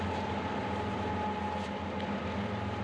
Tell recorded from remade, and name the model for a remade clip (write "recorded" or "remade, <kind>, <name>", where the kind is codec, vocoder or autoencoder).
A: recorded